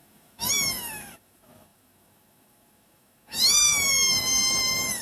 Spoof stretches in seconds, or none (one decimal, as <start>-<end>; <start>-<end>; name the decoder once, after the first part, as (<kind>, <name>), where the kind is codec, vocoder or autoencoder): 0.0-5.0 (autoencoder, DAC-VAE)